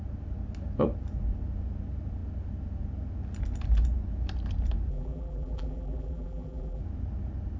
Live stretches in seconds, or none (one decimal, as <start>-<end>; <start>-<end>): 0.0-4.9; 6.8-7.6